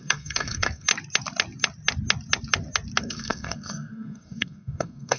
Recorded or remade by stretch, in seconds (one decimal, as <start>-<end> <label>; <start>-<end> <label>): 0.0-0.9 remade; 0.9-3.0 recorded; 3.0-5.2 remade